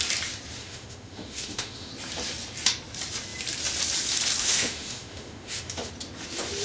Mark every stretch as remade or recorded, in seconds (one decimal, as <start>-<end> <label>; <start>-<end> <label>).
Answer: 0.0-0.6 recorded; 0.6-1.9 remade; 1.9-4.4 recorded; 4.4-5.9 remade; 5.9-6.6 recorded